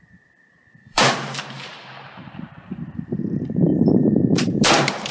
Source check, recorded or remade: remade